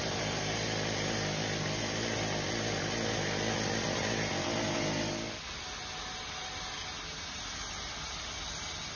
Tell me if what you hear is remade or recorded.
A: recorded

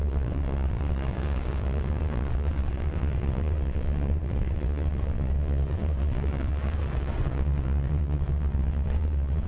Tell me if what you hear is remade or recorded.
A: remade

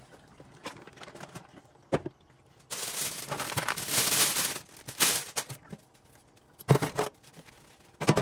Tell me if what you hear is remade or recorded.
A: recorded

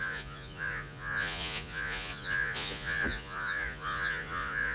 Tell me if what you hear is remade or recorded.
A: remade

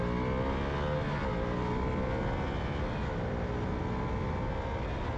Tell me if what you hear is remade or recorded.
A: recorded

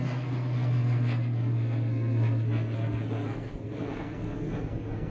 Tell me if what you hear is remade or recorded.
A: remade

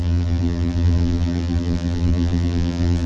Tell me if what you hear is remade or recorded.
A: remade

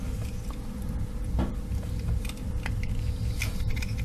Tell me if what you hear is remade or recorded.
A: recorded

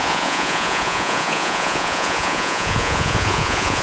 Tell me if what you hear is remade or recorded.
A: remade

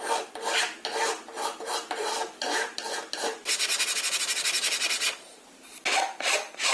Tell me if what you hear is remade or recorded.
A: recorded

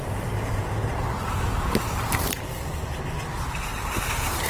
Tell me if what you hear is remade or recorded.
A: remade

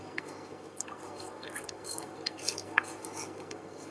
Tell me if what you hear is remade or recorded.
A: remade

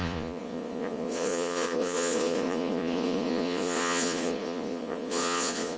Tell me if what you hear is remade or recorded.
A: remade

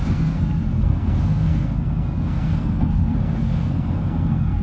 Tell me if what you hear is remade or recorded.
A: remade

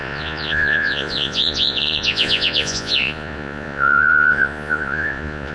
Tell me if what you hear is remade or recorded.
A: remade